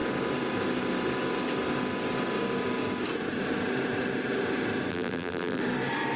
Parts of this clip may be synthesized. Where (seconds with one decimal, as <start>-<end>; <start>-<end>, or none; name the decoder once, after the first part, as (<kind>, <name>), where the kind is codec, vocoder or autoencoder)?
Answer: 4.9-5.6 (vocoder, BigVGAN v2)